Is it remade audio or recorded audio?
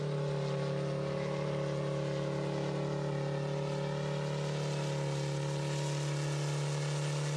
recorded